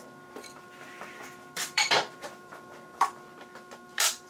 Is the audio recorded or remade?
remade